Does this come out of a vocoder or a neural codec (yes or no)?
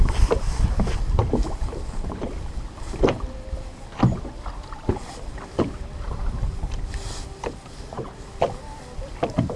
no